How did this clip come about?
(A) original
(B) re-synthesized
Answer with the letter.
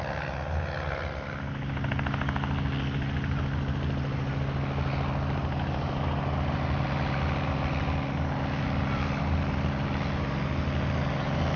A